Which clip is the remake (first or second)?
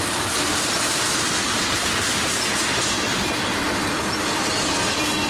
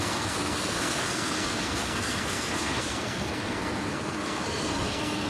second